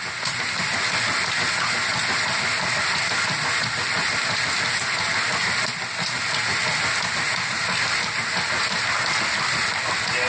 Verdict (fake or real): real